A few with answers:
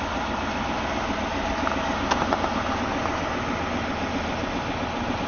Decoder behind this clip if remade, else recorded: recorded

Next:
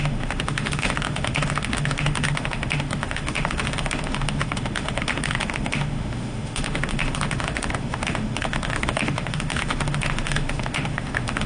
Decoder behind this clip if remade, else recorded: remade, autoencoder, DAC-VAE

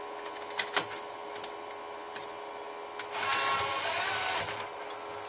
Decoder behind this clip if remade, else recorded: recorded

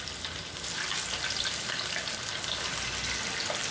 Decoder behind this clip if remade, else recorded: recorded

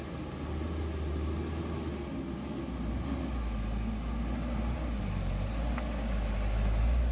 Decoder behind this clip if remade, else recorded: recorded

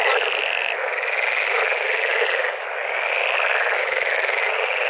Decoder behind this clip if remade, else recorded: recorded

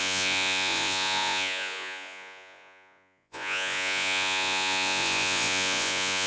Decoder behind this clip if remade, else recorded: remade, vocoder, Vocos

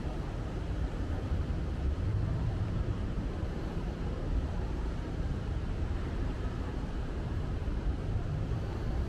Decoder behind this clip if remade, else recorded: remade, vocoder, BigVGAN v2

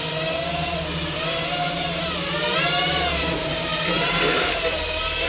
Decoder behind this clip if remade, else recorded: remade, vocoder, BigVGAN v2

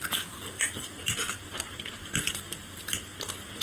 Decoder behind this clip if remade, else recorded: recorded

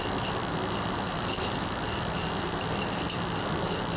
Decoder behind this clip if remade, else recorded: recorded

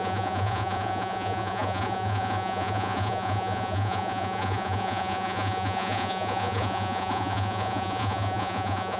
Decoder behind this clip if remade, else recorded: remade, vocoder, Vocos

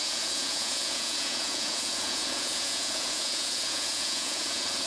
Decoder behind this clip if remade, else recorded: remade, vocoder, Vocos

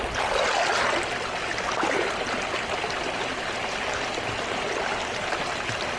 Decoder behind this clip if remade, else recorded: recorded